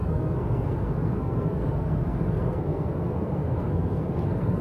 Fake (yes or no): yes